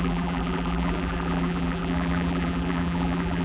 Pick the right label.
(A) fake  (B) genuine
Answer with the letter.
A